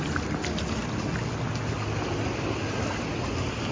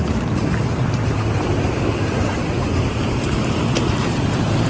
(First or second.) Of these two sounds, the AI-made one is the second